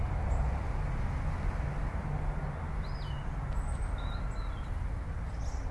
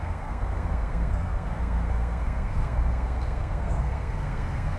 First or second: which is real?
first